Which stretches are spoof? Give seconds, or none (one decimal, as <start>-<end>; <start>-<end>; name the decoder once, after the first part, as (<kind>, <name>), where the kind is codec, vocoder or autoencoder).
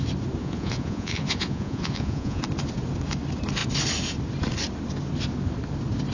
0.4-2.4 (vocoder, Vocos)